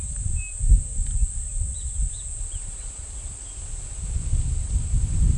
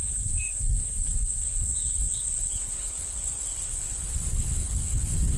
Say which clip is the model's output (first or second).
second